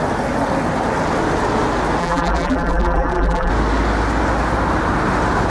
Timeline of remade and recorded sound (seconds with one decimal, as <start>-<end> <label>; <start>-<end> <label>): 0.0-2.0 recorded; 2.0-3.5 remade; 3.5-5.5 recorded